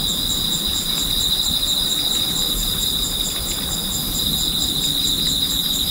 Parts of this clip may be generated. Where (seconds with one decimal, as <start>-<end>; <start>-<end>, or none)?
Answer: none